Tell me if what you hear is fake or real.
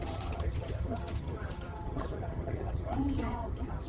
fake